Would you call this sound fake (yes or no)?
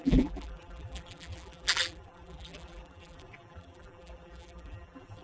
yes